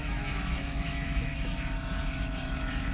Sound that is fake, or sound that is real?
fake